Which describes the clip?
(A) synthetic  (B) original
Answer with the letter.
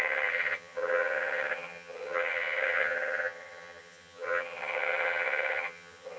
A